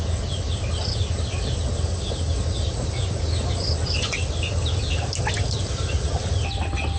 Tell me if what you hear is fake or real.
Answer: real